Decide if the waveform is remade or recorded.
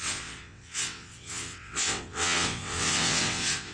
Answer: remade